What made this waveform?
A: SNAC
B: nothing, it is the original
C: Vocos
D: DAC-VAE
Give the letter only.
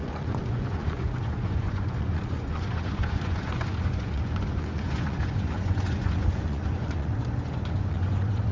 C